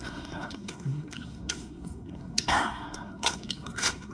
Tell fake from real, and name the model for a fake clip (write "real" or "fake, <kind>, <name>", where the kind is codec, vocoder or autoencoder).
fake, codec, SNAC